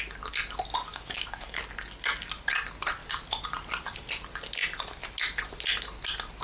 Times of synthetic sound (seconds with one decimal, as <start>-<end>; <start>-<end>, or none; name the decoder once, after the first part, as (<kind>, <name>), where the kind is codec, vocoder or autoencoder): 0.9-1.6 (autoencoder, DAC-VAE)